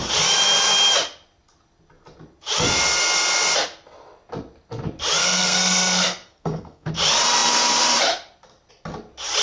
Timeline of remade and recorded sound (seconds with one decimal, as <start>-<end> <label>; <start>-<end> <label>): 0.0-5.2 recorded; 5.2-6.9 remade; 6.9-9.4 recorded